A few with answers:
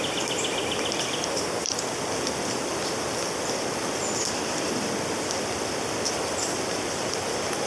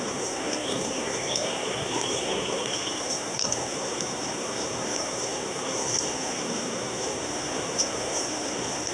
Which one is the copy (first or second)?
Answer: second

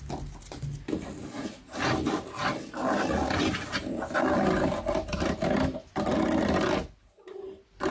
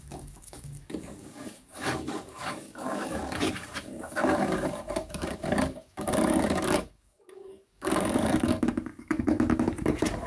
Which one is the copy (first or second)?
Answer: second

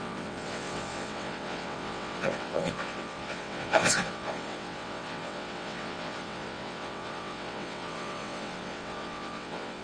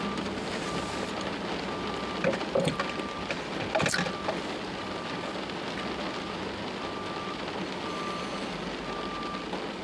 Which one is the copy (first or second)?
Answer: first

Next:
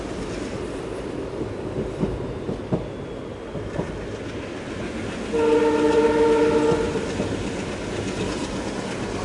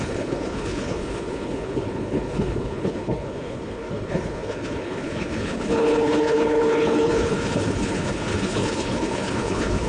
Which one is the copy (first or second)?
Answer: second